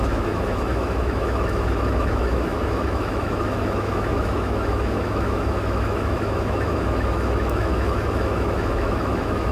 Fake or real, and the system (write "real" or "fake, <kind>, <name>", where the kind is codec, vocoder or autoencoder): fake, autoencoder, DAC-VAE